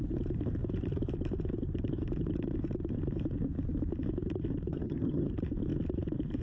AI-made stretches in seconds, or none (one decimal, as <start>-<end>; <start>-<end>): 4.7-5.3